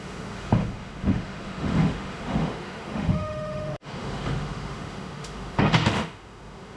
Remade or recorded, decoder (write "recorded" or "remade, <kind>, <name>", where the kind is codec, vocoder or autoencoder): remade, autoencoder, DAC-VAE